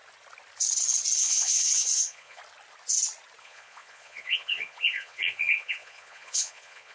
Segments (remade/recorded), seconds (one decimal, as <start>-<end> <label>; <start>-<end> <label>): 0.0-1.2 recorded; 1.2-2.4 remade; 2.4-3.4 recorded; 3.4-6.9 remade